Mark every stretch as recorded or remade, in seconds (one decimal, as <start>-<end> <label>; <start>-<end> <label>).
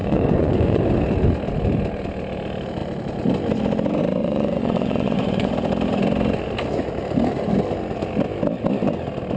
0.0-0.8 remade; 0.8-4.2 recorded; 4.2-5.5 remade; 5.5-9.4 recorded